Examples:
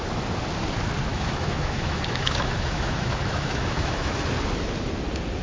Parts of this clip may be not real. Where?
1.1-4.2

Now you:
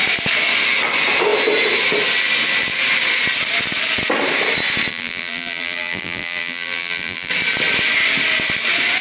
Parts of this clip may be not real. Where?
4.9-7.3

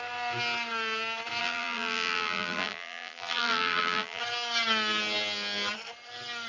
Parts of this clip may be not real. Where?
1.4-4.2

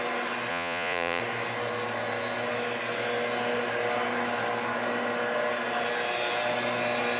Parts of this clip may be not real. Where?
0.5-1.2

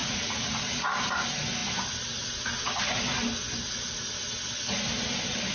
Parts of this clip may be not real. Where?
0.0-0.6

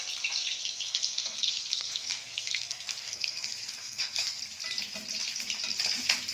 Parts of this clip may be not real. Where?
0.6-4.4

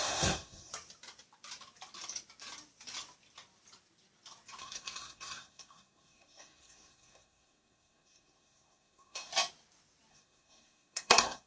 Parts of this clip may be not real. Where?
0.0-0.7; 4.6-9.3; 10.1-11.5